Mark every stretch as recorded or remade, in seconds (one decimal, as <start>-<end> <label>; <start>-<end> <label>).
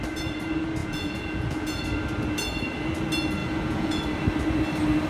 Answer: 0.0-0.8 recorded; 0.8-1.8 remade; 1.8-3.4 recorded; 3.4-4.0 remade; 4.0-5.1 recorded